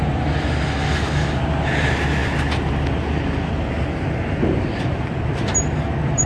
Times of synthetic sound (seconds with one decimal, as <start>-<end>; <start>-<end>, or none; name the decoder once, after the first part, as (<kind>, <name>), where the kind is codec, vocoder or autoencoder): none